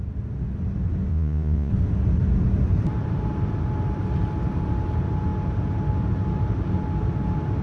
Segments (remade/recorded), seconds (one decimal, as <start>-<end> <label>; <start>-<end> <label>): 0.0-1.1 recorded; 1.1-1.7 remade; 1.7-7.6 recorded